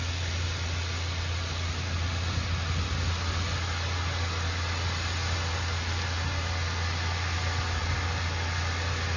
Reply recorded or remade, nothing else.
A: recorded